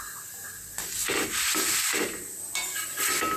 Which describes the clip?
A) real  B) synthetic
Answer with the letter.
A